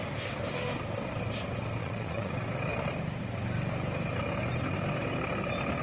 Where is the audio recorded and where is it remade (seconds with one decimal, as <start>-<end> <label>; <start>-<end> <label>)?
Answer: 0.0-1.8 recorded; 1.8-2.3 remade; 2.3-5.8 recorded